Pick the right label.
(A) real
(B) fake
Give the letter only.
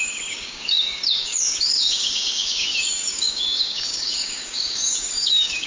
B